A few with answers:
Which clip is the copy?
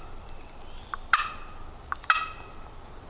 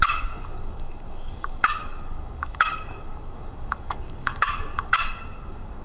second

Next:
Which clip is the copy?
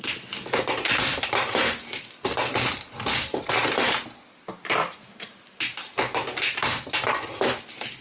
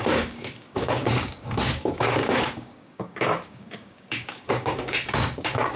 second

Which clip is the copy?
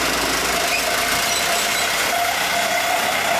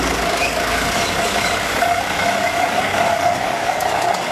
second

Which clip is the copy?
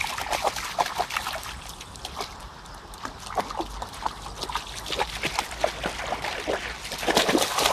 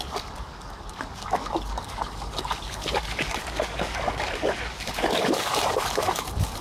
second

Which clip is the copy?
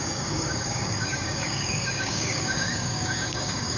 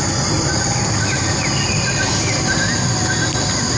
first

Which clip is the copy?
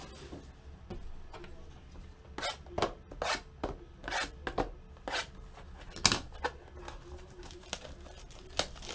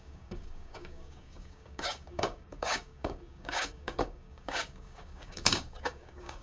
second